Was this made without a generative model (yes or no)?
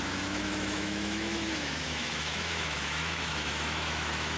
no